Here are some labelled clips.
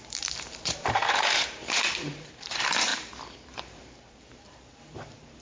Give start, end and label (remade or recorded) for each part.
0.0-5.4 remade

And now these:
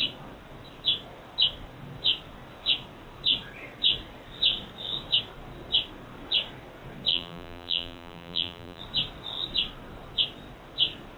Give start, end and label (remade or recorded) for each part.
0.0-7.1 recorded; 7.1-8.8 remade; 8.8-11.2 recorded

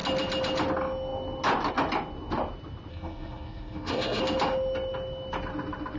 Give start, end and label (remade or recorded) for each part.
0.0-2.9 recorded; 2.9-4.2 remade; 4.2-6.0 recorded